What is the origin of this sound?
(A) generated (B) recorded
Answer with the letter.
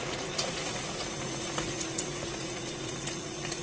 A